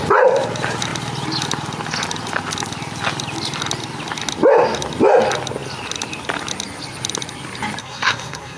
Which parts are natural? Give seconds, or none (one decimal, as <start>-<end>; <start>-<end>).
0.0-7.8